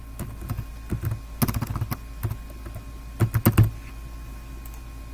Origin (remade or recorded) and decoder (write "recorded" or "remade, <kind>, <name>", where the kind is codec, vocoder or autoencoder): recorded